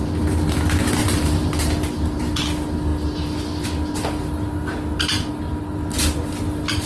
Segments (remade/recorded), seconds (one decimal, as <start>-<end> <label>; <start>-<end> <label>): 0.0-6.9 recorded